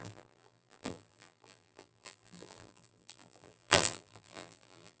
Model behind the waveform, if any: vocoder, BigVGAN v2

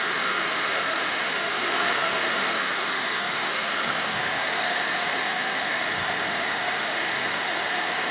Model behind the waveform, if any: autoencoder, DAC-VAE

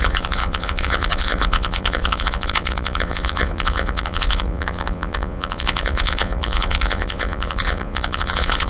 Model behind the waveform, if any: vocoder, Vocos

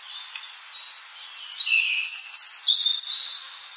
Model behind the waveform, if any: none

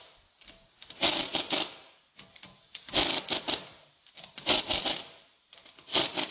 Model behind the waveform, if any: none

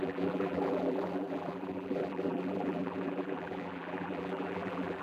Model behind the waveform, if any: vocoder, BigVGAN v2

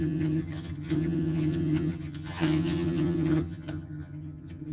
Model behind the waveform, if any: vocoder, HiFi-GAN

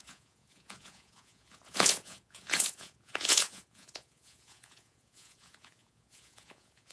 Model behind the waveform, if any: vocoder, Vocos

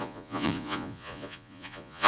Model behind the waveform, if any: vocoder, Vocos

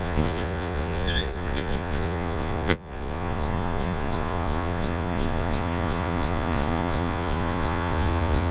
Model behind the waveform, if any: vocoder, Vocos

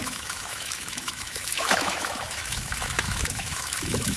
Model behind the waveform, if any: autoencoder, DAC-VAE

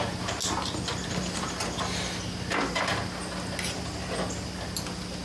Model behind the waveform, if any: none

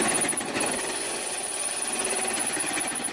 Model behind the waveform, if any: vocoder, Vocos